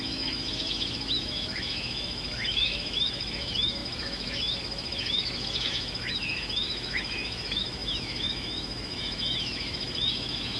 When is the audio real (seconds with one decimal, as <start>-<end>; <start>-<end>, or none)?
none